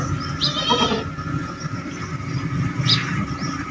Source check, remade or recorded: recorded